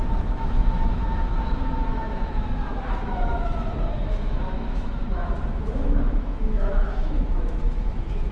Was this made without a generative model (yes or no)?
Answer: no